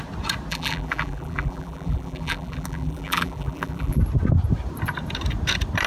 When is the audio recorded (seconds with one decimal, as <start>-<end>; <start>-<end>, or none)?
0.0-0.5; 4.0-5.9